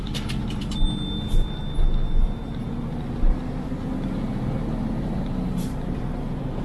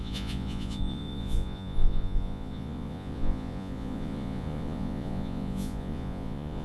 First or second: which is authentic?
first